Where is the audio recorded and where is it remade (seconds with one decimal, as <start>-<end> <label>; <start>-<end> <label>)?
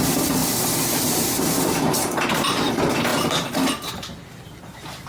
0.0-0.4 recorded; 0.4-2.7 remade; 2.7-5.1 recorded